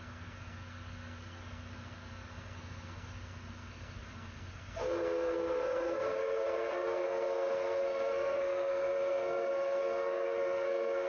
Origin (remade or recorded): remade